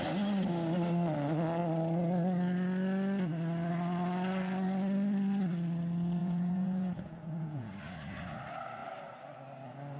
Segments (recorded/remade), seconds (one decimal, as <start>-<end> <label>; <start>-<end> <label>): 0.0-6.2 recorded; 6.2-7.7 remade; 7.7-10.0 recorded